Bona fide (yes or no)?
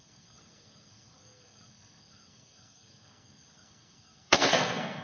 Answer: no